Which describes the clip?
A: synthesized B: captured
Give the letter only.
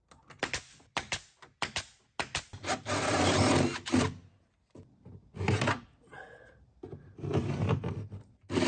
B